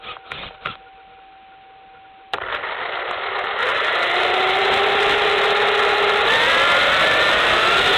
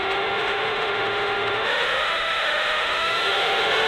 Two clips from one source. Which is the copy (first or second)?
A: second